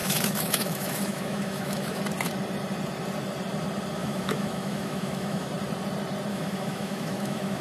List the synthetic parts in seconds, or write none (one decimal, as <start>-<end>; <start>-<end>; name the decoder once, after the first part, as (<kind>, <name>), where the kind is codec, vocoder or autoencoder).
0.0-2.0 (autoencoder, DAC-VAE); 4.0-5.5; 6.3-7.6